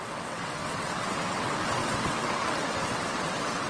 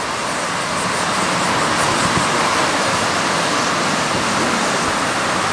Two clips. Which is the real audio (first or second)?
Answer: second